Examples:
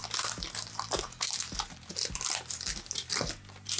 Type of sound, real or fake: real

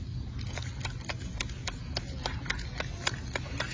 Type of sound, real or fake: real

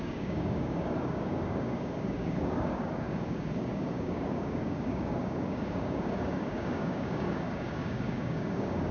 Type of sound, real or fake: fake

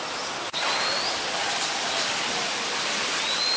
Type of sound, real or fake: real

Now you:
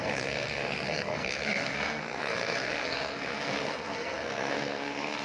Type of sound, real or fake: fake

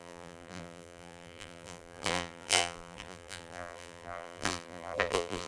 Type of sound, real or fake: fake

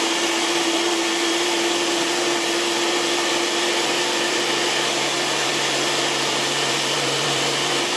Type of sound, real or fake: fake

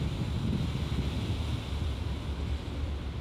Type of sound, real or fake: real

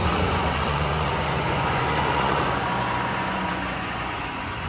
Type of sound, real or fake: fake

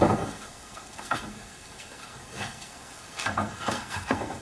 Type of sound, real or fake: fake